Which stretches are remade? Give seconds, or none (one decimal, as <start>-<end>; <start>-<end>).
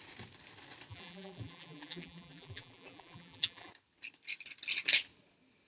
0.9-3.7